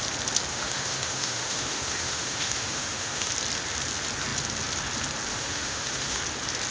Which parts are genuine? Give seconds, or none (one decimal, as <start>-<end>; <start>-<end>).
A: 0.0-0.5; 3.3-5.3; 6.2-6.7